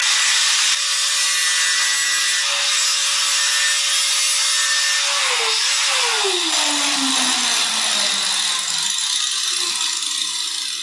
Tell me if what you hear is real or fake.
real